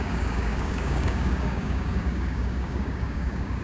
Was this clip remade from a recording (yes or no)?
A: yes